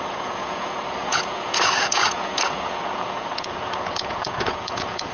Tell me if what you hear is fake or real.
fake